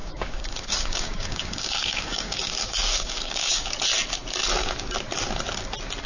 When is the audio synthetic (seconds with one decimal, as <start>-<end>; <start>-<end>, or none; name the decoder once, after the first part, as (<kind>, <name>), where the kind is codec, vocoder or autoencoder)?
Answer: 0.0-3.7 (codec, DAC)